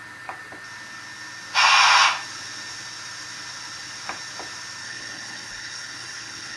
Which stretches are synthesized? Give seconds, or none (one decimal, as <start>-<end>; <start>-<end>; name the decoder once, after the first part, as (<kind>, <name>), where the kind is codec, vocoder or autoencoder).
4.8-6.6 (codec, HILCodec)